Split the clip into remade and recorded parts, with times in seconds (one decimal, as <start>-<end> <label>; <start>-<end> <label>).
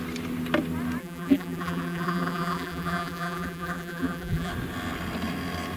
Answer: 0.0-1.0 recorded; 1.0-4.5 remade; 4.5-5.8 recorded